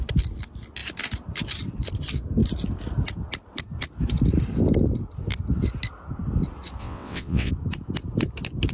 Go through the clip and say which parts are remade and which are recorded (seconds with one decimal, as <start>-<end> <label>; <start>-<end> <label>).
0.0-6.8 recorded; 6.8-7.5 remade; 7.5-8.7 recorded